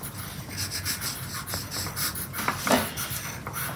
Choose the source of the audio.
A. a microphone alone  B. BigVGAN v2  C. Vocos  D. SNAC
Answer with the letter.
A